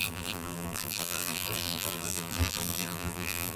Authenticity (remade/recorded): remade